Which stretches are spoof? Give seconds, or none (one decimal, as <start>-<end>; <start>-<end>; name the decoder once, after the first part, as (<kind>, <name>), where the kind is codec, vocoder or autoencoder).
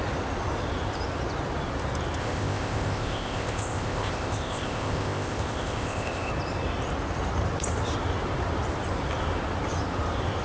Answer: 2.2-6.3 (codec, ZipCodec)